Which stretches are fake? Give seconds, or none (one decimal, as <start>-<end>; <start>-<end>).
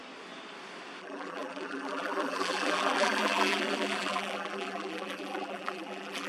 1.0-6.3